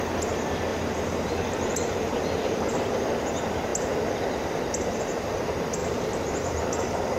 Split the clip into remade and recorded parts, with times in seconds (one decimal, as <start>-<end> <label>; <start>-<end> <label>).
0.0-0.7 recorded; 0.7-2.7 remade; 2.7-5.8 recorded; 5.8-7.2 remade